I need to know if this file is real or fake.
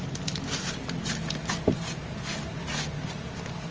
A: real